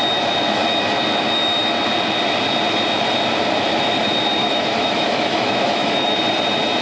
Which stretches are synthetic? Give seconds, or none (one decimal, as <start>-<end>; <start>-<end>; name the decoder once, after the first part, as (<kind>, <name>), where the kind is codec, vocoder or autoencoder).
4.4-6.2 (autoencoder, DAC-VAE)